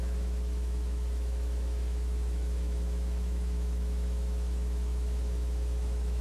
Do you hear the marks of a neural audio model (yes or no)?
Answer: yes